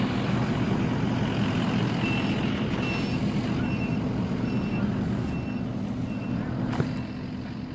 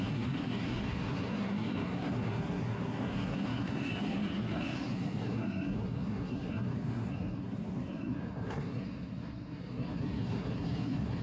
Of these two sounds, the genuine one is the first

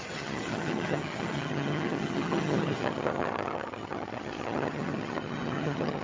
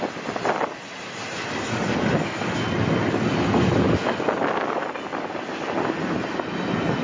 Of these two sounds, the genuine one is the second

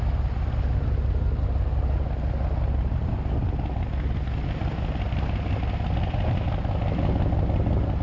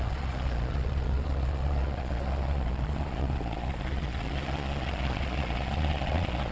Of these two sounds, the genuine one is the first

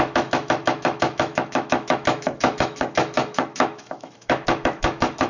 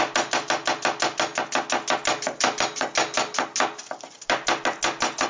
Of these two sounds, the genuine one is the second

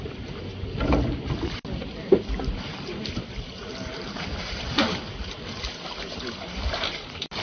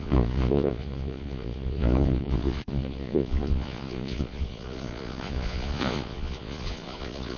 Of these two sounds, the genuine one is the first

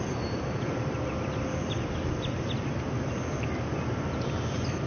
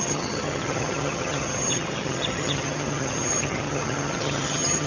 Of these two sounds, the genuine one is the first